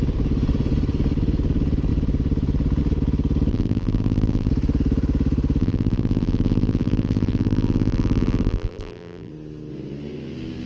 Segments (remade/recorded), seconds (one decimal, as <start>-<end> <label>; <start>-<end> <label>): 0.0-3.5 recorded; 3.5-4.5 remade; 4.5-5.6 recorded; 5.6-9.3 remade; 9.3-10.7 recorded